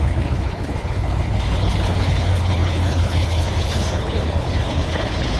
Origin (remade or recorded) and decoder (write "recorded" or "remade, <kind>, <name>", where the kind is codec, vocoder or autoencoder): remade, codec, HILCodec